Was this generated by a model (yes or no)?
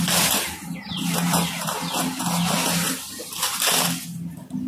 no